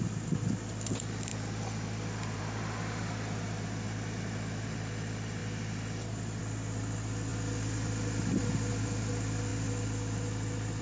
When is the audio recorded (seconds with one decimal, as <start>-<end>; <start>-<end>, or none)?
0.0-10.8